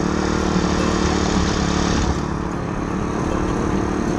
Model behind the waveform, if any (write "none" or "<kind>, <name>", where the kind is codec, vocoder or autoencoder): none